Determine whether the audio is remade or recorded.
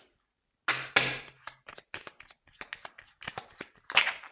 recorded